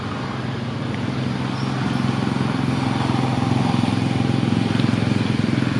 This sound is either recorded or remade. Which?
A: recorded